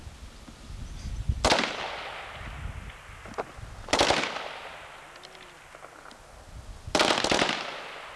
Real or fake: real